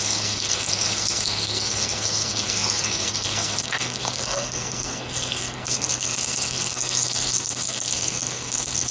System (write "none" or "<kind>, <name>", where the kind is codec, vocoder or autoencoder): codec, SNAC